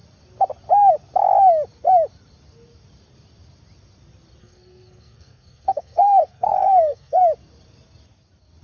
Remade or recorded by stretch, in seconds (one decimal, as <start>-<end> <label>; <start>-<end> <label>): 0.0-4.4 recorded; 4.4-7.2 remade; 7.2-8.6 recorded